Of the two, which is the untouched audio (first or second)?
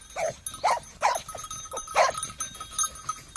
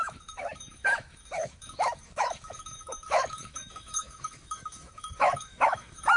first